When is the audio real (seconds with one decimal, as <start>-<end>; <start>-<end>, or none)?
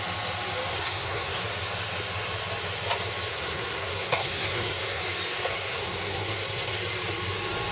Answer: 0.0-0.7; 1.4-3.3; 5.0-5.5; 6.7-7.7